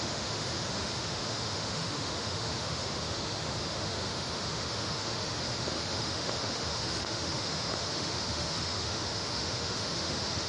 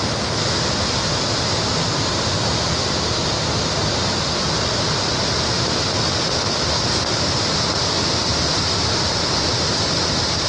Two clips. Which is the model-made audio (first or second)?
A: first